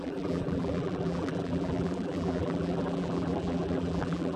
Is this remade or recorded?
remade